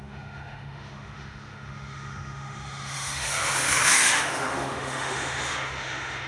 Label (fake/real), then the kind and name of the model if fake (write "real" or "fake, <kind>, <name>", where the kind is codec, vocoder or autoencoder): fake, autoencoder, DAC-VAE